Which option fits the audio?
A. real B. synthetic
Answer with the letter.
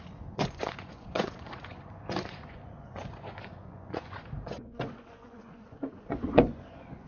B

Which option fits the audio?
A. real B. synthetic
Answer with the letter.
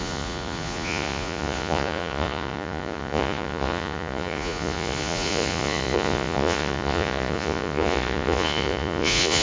B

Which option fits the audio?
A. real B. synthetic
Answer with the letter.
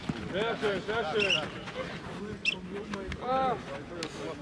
A